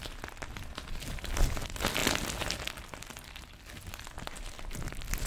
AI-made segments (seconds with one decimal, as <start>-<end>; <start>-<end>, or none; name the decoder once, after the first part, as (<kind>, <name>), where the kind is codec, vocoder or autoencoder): none